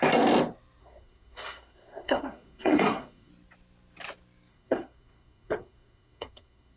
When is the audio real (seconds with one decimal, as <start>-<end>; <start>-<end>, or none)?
0.0-0.8; 3.3-4.5